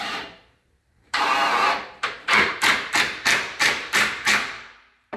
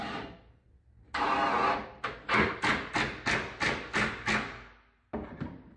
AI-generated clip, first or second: first